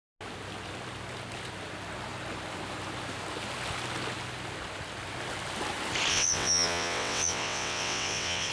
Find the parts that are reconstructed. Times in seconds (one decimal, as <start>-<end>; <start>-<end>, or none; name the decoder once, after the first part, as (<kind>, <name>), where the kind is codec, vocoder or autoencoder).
6.1-8.5 (vocoder, WaveNeXt)